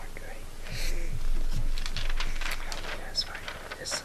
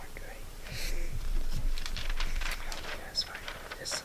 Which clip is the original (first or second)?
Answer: first